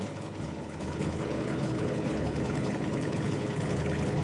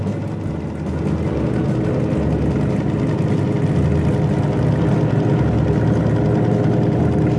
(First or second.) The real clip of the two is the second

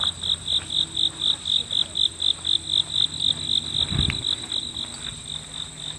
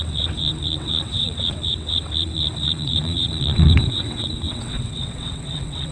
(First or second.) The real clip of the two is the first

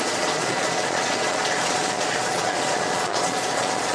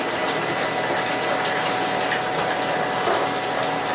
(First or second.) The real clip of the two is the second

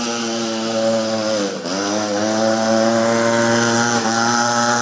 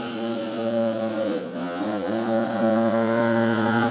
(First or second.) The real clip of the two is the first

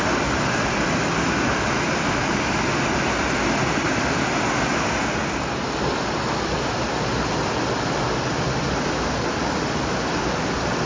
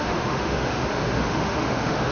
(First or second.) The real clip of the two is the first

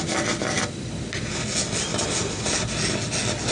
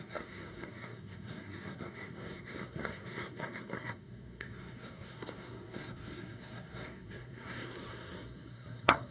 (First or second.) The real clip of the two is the first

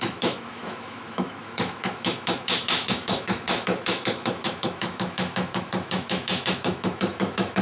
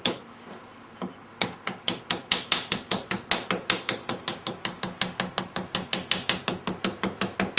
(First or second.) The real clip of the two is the second